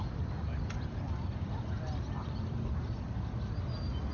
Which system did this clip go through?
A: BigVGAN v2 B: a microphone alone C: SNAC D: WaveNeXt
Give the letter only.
B